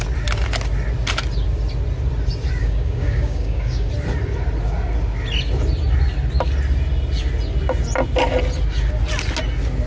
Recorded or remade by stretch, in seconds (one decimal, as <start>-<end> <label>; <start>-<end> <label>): 0.0-2.6 recorded; 2.6-3.9 remade; 3.9-9.9 recorded